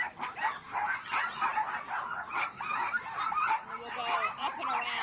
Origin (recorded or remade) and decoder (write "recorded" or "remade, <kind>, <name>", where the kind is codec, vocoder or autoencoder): recorded